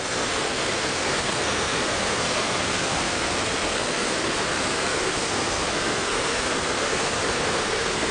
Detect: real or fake fake